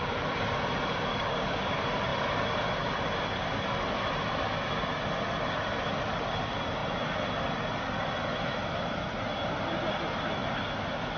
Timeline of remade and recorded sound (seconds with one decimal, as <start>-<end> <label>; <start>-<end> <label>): 0.0-1.1 recorded; 1.1-1.7 remade; 1.7-11.2 recorded